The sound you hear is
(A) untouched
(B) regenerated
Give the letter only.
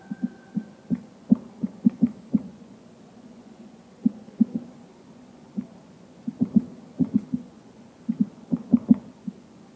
B